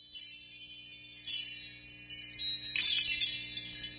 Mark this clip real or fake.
real